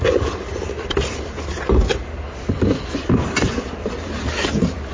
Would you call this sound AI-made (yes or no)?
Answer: no